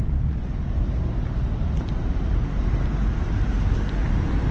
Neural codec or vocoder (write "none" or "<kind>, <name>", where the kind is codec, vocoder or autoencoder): none